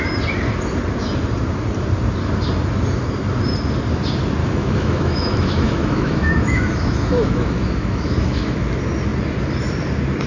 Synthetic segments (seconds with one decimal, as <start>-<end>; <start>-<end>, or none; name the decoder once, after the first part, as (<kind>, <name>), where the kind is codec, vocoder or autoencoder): 4.4-8.7 (autoencoder, DAC-VAE)

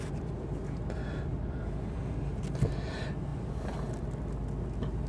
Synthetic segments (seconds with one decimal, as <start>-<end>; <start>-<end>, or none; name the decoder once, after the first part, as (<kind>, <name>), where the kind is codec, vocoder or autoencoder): none